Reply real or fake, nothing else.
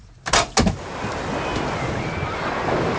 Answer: real